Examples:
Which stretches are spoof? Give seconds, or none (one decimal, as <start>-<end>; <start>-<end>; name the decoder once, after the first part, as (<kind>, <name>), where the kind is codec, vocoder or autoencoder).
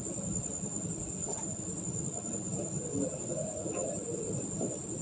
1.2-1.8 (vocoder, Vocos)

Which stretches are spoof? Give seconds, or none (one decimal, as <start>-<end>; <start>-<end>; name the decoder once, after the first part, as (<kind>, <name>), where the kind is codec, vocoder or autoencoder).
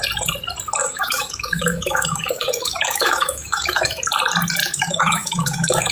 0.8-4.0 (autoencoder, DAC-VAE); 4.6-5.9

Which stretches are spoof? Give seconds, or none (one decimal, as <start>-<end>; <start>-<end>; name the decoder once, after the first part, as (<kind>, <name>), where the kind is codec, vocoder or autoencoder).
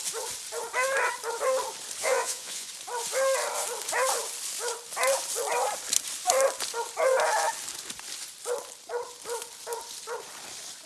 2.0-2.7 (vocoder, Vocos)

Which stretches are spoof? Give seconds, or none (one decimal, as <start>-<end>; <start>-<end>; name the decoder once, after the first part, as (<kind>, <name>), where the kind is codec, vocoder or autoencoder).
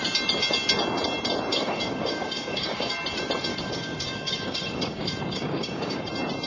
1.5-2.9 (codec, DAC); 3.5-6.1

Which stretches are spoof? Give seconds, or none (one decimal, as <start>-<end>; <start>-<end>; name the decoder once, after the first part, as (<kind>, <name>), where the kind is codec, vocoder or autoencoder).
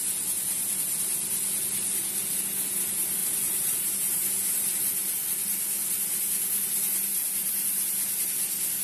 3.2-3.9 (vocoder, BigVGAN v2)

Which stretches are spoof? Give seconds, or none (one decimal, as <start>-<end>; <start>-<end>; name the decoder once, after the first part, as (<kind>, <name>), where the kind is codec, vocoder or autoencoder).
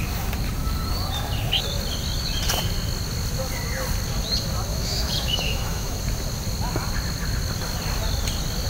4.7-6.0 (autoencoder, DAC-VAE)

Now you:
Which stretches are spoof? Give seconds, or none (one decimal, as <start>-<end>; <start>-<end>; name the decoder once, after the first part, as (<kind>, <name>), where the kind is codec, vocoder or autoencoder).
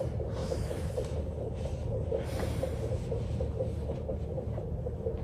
0.4-0.9 (autoencoder, DAC-VAE)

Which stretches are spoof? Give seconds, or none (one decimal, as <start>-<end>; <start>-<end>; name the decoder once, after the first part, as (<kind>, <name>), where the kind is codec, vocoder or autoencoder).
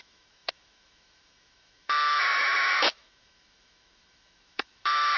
0.0-5.2 (autoencoder, DAC-VAE)